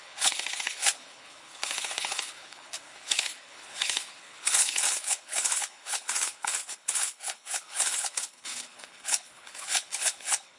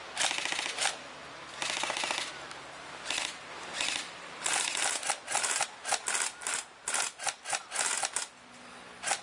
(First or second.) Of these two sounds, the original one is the second